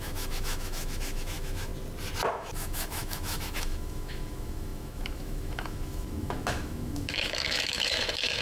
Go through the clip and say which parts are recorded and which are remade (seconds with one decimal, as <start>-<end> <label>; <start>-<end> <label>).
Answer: 0.0-1.7 remade; 1.7-2.3 recorded; 2.3-8.4 remade